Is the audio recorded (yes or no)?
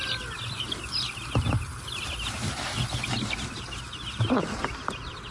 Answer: yes